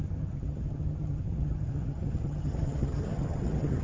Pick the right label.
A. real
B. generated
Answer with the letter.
B